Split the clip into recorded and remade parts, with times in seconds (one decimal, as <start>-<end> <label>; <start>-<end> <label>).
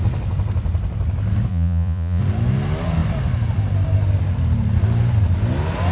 0.0-1.5 recorded; 1.5-2.2 remade; 2.2-5.9 recorded